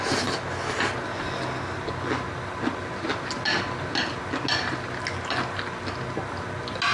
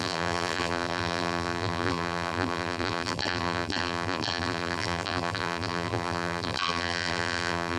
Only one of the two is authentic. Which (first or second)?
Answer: first